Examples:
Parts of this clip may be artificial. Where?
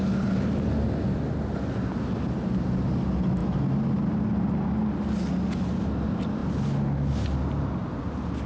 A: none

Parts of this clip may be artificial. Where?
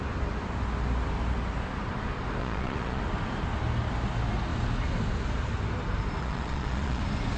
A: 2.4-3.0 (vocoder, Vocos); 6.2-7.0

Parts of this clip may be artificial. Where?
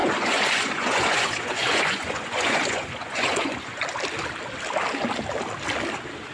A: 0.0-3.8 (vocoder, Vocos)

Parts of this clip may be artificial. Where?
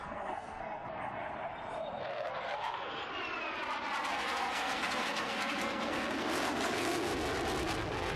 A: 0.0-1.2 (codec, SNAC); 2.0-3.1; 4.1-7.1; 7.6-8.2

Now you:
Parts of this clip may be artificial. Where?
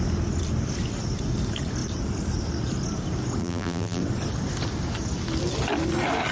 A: 3.4-4.0 (vocoder, BigVGAN v2)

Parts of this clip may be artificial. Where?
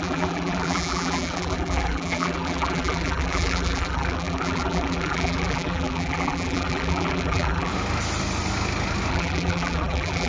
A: 0.0-7.7 (vocoder, BigVGAN v2); 9.1-10.3